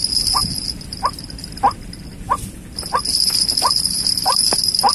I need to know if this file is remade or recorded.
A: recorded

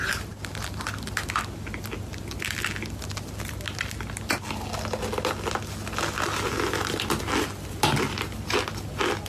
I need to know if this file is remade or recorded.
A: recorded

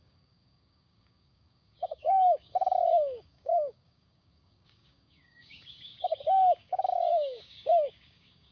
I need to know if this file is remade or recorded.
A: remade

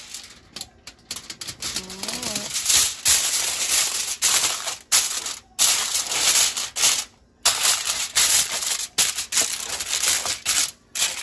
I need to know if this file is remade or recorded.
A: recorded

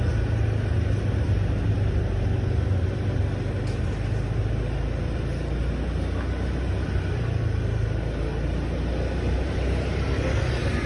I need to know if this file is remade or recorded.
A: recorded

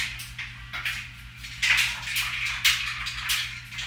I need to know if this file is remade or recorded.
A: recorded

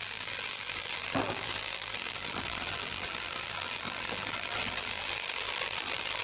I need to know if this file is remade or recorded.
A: remade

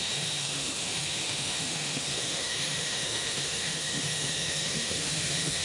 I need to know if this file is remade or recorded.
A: remade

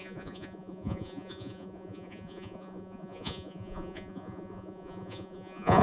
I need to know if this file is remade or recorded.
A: remade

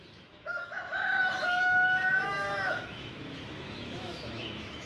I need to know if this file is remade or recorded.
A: remade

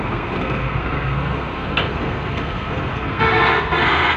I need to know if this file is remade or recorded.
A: remade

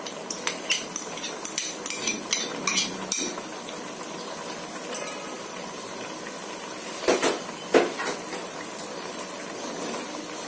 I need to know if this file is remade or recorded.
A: recorded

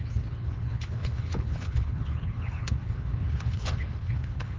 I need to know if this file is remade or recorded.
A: remade